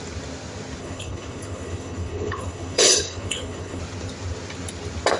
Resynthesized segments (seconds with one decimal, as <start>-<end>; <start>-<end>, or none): 0.8-3.8